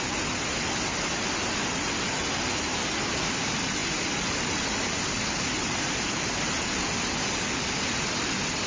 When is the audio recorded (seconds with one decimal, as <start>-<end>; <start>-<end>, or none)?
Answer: 0.0-8.7